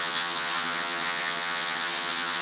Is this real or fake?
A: fake